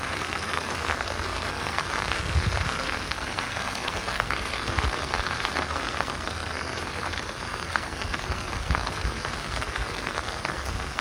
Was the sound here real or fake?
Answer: fake